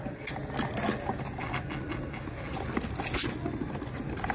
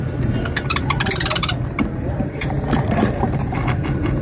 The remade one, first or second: second